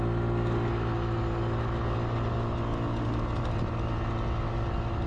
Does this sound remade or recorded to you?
recorded